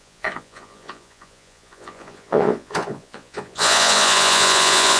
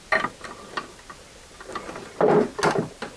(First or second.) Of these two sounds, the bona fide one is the second